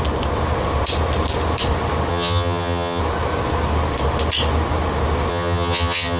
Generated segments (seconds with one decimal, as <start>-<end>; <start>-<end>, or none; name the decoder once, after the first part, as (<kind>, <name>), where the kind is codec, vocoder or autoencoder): 2.1-3.0 (vocoder, HiFi-GAN); 5.3-6.2